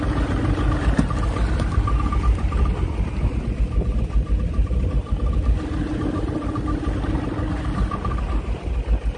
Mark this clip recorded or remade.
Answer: recorded